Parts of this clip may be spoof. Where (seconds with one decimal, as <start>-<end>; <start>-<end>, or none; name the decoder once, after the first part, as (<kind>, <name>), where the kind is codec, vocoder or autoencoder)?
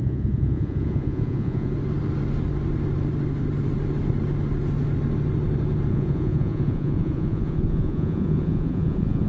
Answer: 0.0-1.7 (vocoder, Vocos); 5.9-9.3